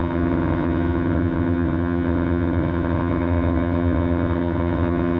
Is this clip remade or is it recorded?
remade